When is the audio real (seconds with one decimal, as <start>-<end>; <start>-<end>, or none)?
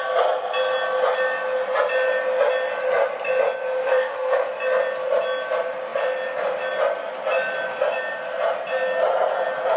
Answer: 0.0-3.8; 4.5-9.8